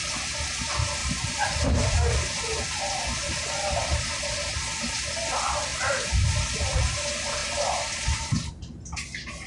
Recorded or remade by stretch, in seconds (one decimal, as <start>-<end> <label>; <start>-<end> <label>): 0.0-1.0 recorded; 1.0-4.2 remade; 4.2-5.7 recorded; 5.7-6.8 remade; 6.8-7.4 recorded; 7.4-8.5 remade; 8.5-9.5 recorded